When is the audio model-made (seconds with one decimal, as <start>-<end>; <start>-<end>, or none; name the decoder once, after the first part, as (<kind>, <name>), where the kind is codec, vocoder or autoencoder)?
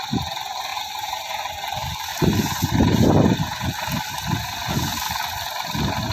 0.7-1.4 (vocoder, BigVGAN v2); 2.1-3.1